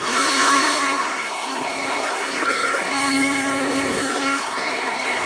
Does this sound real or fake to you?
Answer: fake